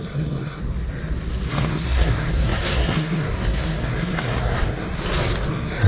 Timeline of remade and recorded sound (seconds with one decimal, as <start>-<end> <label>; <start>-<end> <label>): 0.0-0.6 remade; 0.6-1.5 recorded; 1.5-5.0 remade; 5.0-5.5 recorded; 5.5-5.9 remade